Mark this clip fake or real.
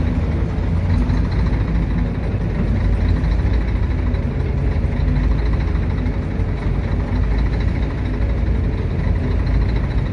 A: real